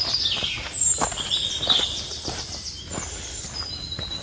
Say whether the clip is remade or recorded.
recorded